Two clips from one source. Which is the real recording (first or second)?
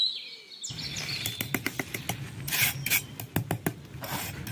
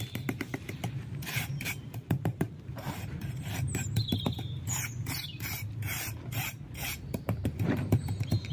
first